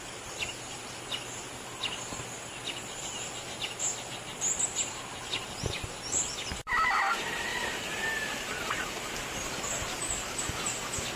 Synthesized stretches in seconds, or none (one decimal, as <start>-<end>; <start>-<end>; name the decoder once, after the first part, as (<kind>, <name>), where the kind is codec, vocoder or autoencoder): 7.5-10.4 (vocoder, BigVGAN v2)